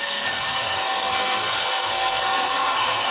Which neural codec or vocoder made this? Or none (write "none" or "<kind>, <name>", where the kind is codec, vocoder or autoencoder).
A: codec, SNAC